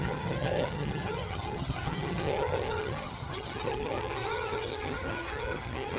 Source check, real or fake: fake